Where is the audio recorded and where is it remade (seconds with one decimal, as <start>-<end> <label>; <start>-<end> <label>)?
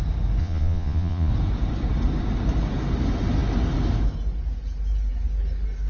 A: 0.0-0.4 recorded; 0.4-1.3 remade; 1.3-5.9 recorded